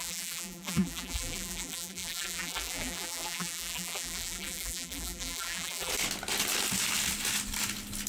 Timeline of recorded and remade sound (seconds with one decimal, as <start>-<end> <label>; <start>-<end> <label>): 0.0-5.9 remade; 5.9-8.1 recorded